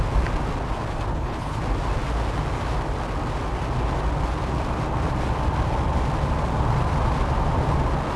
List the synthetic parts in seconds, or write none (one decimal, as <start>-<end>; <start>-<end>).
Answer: 1.1-1.6